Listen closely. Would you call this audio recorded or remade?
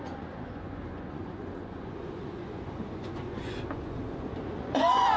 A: remade